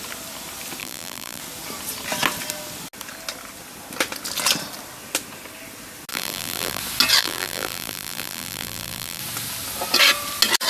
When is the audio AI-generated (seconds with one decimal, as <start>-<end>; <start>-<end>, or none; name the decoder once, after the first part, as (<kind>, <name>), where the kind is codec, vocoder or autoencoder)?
0.8-1.4 (vocoder, BigVGAN v2); 6.1-6.8; 7.2-9.2